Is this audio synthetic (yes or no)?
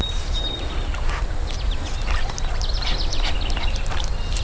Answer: no